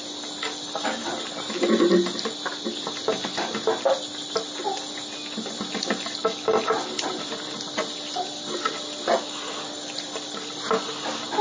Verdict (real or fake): real